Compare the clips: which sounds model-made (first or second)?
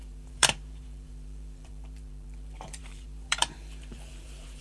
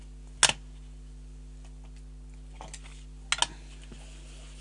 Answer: first